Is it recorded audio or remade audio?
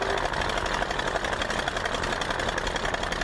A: recorded